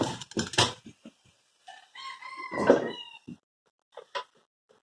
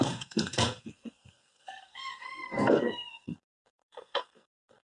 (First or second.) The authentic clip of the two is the first